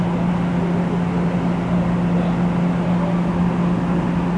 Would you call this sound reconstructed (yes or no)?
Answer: no